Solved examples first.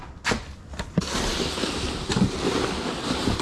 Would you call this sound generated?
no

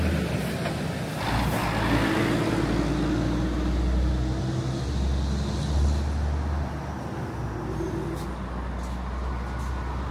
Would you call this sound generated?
no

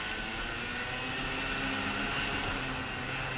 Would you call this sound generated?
no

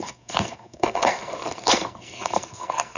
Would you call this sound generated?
yes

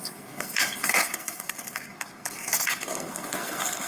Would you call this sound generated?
yes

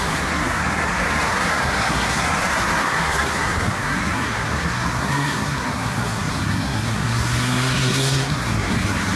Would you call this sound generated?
yes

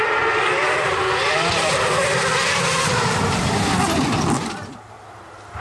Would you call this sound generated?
no